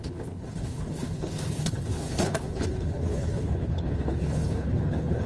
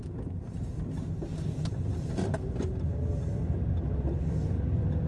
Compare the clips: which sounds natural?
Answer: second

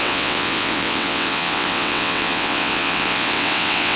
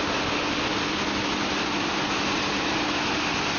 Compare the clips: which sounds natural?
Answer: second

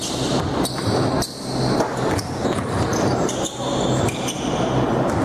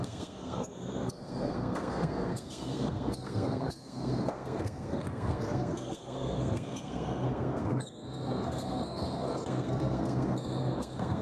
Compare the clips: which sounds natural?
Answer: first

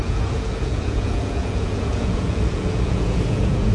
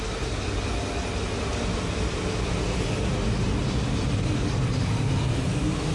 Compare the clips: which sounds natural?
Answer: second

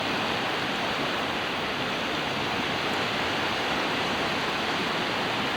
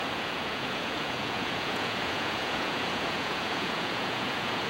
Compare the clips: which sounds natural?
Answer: first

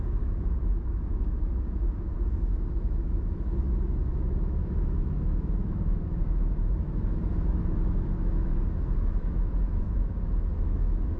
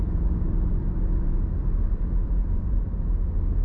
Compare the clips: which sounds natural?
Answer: second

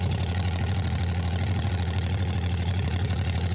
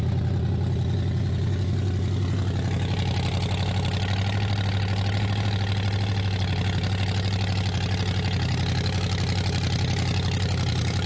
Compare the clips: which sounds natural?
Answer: second